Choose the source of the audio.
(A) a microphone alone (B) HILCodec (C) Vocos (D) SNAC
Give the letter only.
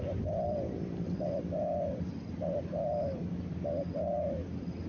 A